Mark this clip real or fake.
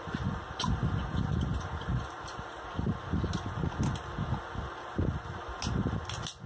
real